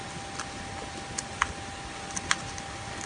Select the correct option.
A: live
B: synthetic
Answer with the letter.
A